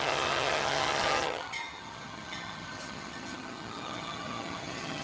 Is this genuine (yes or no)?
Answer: no